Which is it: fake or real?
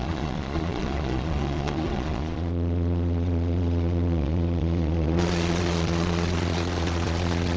fake